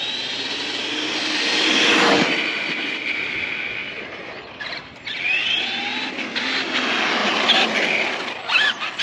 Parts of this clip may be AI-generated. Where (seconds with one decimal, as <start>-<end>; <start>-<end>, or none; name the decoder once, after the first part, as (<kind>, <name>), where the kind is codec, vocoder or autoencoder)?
3.8-4.9 (vocoder, BigVGAN v2)